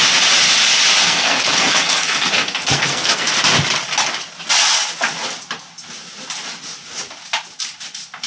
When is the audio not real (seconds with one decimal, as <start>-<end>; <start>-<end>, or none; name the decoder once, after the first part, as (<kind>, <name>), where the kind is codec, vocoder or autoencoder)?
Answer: 1.0-3.4 (codec, SNAC)